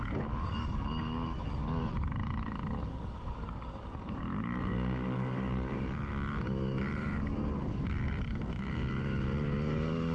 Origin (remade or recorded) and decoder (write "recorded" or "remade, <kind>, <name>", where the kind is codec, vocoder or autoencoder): remade, codec, DAC